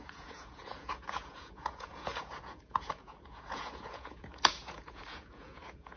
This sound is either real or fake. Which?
fake